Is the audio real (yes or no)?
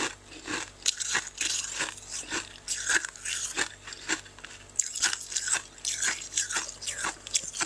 yes